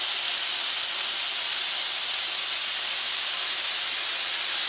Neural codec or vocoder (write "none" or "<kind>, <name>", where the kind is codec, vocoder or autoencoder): none